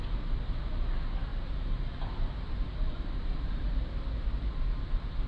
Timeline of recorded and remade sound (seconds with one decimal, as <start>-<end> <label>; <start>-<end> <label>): 0.0-1.3 recorded; 1.3-3.7 remade; 3.7-5.3 recorded